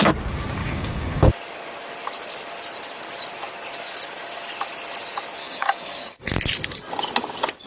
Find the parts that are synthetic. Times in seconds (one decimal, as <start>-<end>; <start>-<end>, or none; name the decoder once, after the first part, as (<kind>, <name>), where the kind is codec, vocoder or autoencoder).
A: 0.6-1.3 (codec, DAC); 5.4-6.2

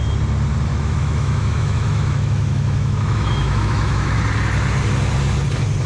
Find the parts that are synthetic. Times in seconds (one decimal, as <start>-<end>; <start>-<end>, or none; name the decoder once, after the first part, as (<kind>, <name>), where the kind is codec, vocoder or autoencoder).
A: 0.7-4.2 (autoencoder, DAC-VAE)

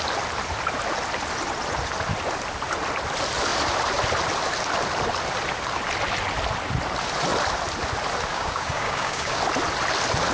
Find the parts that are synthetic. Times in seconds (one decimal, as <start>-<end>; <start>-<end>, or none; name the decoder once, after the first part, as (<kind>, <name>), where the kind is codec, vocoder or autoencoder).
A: 8.3-9.4 (codec, DAC)

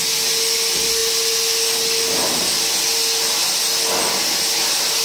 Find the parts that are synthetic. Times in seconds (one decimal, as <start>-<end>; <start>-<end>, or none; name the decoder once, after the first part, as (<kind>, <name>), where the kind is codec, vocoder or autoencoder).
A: none